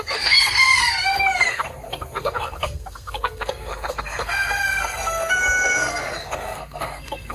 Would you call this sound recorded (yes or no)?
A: no